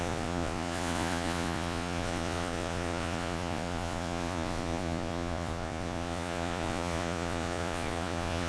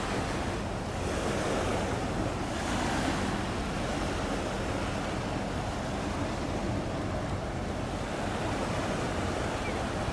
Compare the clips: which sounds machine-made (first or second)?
first